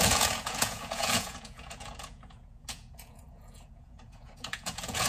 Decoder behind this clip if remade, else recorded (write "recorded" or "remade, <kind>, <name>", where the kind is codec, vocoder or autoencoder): remade, vocoder, Vocos